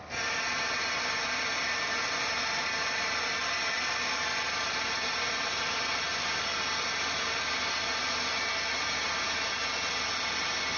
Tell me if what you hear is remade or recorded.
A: recorded